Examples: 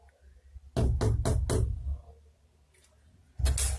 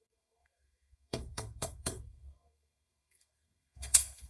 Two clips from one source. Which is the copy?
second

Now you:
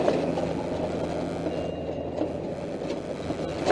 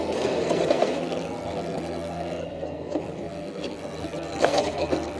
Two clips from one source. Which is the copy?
second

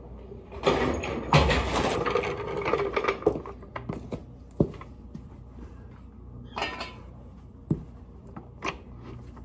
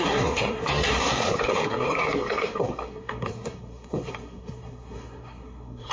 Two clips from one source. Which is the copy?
second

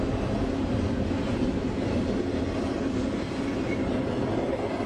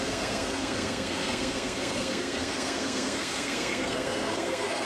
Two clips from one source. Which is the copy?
second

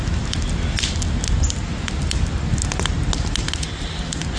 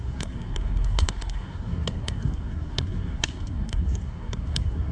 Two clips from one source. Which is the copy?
second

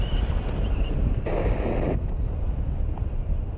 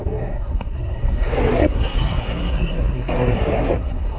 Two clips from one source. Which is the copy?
second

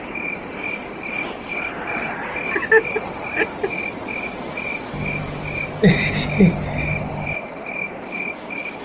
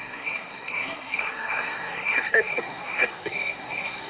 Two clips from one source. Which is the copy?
second